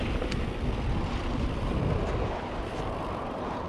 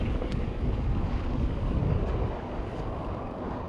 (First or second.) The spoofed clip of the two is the second